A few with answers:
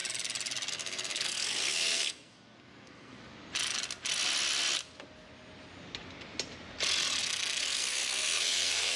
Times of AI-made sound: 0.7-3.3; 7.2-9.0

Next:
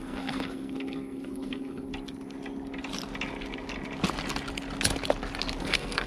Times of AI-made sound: 0.0-1.9; 5.6-6.1

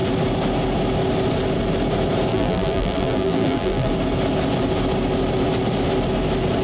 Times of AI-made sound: 2.3-3.9

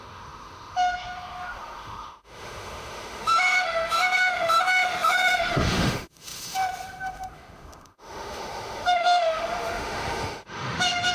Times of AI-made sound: 0.0-11.1